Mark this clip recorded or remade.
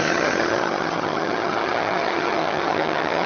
remade